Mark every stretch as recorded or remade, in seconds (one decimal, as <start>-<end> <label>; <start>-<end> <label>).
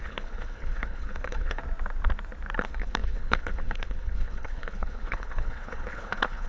0.0-1.6 remade; 1.6-2.6 recorded; 2.6-6.5 remade